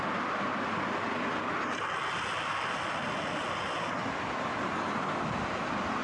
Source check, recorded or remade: recorded